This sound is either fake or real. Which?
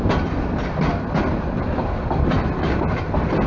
real